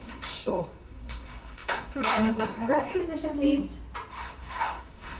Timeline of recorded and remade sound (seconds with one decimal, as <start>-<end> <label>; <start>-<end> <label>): 0.0-3.0 remade; 3.0-4.1 recorded; 4.1-5.2 remade